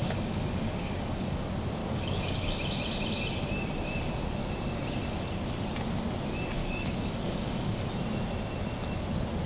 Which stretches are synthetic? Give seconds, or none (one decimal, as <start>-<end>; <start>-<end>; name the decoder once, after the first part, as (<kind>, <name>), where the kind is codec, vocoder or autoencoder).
0.0-1.4 (codec, DAC); 1.8-2.5; 6.6-7.8